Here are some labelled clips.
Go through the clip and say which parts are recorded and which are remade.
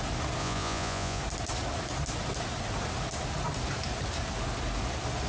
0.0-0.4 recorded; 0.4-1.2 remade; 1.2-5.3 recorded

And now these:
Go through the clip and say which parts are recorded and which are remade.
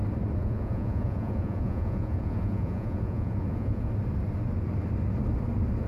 0.0-0.4 recorded; 0.4-3.9 remade; 3.9-5.9 recorded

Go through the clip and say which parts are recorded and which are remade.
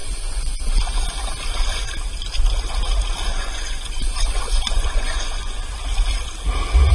0.0-0.8 remade; 0.8-3.3 recorded; 3.3-5.7 remade; 5.7-6.9 recorded